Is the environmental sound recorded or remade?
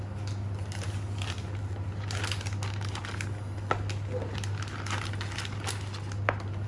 recorded